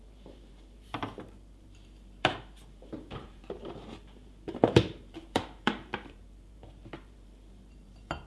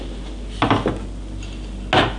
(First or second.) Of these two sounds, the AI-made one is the first